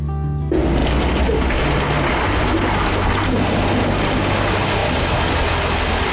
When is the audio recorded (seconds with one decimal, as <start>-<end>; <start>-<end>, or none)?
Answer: 0.0-6.1